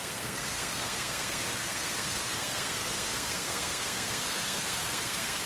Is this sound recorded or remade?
remade